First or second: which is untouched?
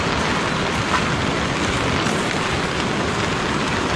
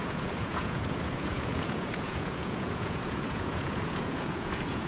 first